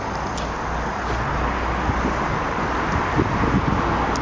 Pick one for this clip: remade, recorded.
recorded